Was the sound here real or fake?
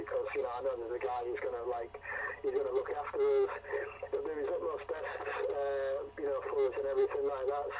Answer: real